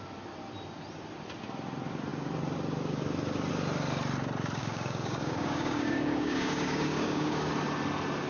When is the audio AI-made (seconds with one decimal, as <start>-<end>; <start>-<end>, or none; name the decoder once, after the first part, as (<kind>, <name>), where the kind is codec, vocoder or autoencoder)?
4.6-7.5 (codec, DAC)